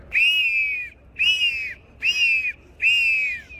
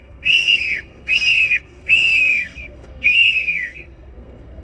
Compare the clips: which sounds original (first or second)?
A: first